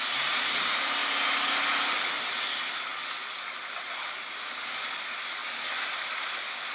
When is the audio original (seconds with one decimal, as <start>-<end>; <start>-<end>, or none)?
0.0-1.0; 1.5-6.7